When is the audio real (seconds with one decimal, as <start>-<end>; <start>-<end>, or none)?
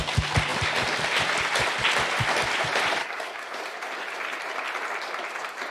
0.0-3.0; 3.6-5.7